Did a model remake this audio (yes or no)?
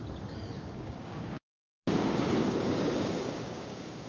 yes